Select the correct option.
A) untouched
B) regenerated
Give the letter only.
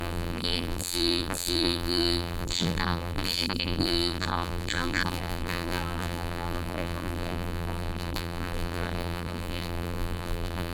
B